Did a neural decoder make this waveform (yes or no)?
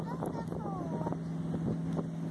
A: no